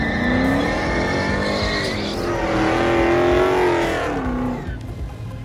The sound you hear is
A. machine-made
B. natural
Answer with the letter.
B